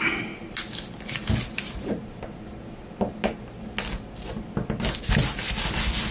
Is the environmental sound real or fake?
real